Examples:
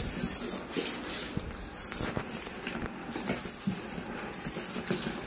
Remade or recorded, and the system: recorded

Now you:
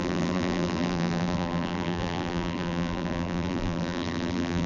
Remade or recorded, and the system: remade, vocoder, BigVGAN v2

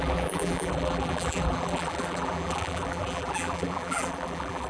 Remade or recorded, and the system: remade, vocoder, BigVGAN v2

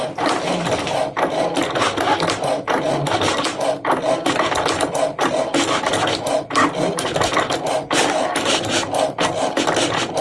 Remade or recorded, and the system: recorded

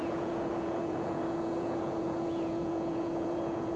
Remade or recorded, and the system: remade, vocoder, Vocos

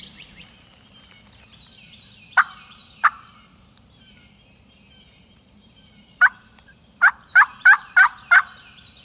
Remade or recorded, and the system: remade, vocoder, BigVGAN v2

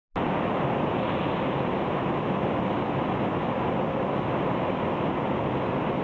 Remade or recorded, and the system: recorded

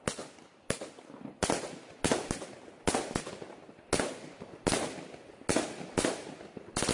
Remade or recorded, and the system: recorded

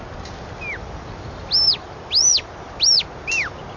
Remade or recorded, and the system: recorded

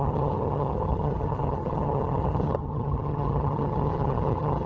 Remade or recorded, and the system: remade, vocoder, HiFi-GAN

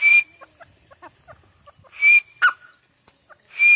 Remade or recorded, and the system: recorded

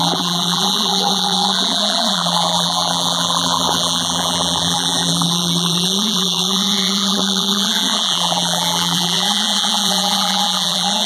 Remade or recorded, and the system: remade, vocoder, BigVGAN v2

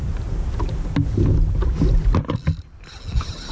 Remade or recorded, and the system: recorded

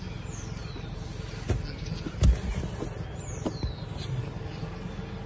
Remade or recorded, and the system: recorded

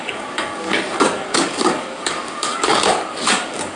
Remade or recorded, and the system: remade, codec, DAC